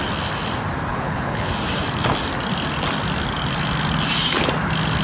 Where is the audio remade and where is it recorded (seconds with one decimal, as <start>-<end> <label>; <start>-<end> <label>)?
0.0-0.9 recorded; 0.9-1.5 remade; 1.5-5.0 recorded

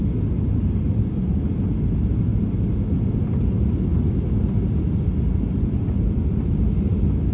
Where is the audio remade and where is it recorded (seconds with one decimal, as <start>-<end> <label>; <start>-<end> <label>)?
0.0-7.3 recorded

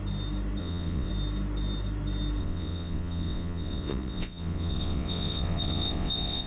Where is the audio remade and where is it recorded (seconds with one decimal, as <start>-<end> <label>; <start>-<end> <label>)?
0.0-0.6 recorded; 0.6-1.1 remade; 1.1-2.4 recorded; 2.4-6.5 remade

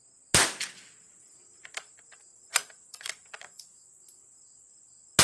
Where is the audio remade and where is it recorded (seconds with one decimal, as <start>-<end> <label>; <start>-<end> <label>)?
0.0-2.3 recorded; 2.3-3.8 remade; 3.8-5.2 recorded

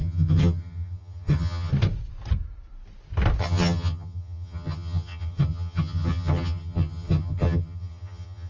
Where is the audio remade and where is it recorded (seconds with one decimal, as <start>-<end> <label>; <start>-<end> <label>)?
0.0-1.7 remade; 1.7-3.4 recorded; 3.4-8.5 remade

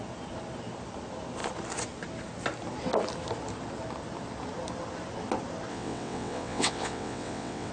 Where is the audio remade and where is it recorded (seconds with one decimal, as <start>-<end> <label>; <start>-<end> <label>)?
0.0-5.7 recorded; 5.7-7.7 remade

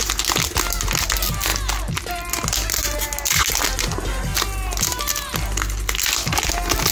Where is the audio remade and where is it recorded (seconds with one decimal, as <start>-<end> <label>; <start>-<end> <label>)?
0.0-6.9 recorded